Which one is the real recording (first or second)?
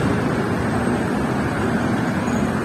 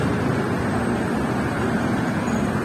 second